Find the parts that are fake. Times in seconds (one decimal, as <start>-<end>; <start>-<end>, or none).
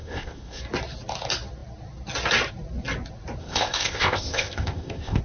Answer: 0.0-0.6; 3.4-5.2